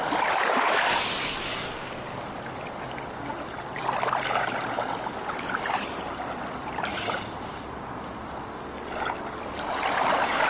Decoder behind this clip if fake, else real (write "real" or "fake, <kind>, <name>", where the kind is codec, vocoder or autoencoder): real